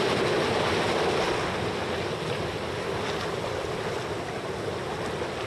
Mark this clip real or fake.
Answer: real